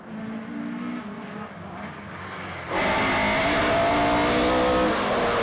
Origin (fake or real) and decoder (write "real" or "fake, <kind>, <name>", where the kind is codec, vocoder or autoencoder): real